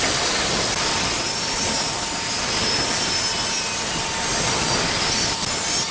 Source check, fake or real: real